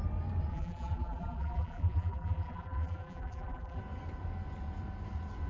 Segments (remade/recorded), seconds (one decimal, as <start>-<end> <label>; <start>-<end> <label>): 0.0-0.5 recorded; 0.5-3.8 remade; 3.8-5.5 recorded